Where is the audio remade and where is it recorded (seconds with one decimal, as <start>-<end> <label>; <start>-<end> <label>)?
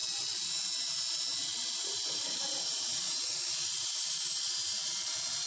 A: 0.0-5.5 recorded